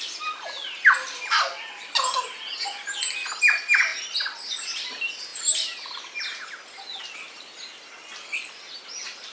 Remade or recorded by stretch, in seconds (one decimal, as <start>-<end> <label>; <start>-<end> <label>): 0.0-9.3 recorded